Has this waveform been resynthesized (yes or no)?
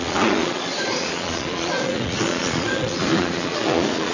yes